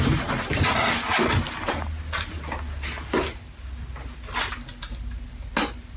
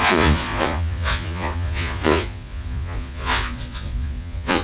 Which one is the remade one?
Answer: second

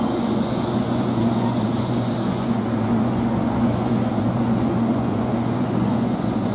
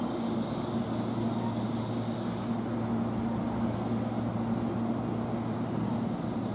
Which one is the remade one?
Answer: first